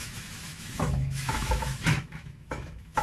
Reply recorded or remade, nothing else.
remade